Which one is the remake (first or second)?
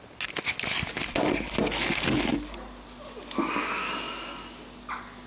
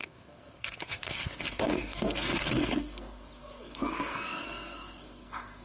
second